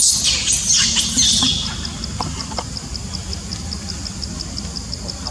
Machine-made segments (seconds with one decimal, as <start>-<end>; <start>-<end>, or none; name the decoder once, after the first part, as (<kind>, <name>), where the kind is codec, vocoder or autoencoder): none